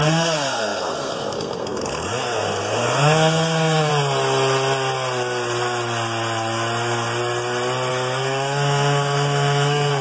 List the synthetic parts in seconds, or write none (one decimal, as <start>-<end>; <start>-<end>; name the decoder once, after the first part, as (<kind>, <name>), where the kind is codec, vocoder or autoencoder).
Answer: 0.0-3.9 (codec, SNAC); 7.9-10.0